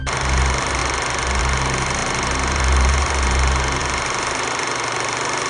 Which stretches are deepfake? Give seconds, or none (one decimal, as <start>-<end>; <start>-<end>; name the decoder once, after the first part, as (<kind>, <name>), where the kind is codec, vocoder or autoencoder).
0.0-0.8 (vocoder, BigVGAN v2); 1.4-5.5

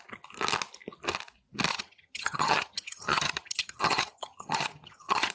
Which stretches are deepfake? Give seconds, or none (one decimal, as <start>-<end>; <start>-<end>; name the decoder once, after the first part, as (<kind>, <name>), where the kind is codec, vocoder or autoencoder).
1.7-5.3 (vocoder, HiFi-GAN)

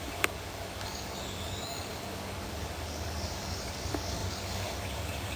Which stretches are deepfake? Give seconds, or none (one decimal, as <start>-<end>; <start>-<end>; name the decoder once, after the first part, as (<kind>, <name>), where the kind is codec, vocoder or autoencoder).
0.0-5.4 (codec, DAC)

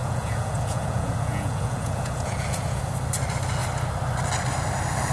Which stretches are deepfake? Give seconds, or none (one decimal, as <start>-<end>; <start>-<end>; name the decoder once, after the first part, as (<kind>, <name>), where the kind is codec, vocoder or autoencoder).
0.0-2.8 (vocoder, Vocos)

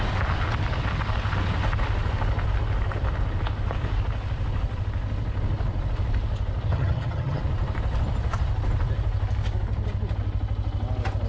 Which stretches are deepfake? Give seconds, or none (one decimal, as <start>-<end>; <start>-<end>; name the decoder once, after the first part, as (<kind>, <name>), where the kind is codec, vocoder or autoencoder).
6.7-7.4 (vocoder, HiFi-GAN)

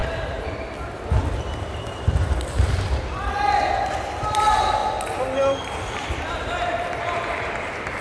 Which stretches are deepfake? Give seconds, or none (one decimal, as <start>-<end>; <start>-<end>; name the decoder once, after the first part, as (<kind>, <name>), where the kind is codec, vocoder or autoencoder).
0.0-4.8 (vocoder, BigVGAN v2); 6.2-8.0

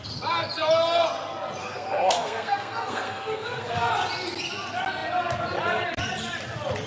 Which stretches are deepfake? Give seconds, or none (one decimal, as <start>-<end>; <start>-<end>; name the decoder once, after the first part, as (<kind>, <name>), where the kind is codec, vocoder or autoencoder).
1.6-3.9 (codec, SNAC)